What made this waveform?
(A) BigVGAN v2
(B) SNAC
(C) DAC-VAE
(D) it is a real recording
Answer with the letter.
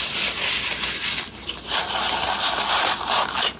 D